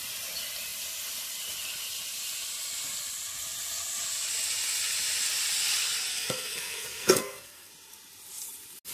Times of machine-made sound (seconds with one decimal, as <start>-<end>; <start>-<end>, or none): 6.1-7.7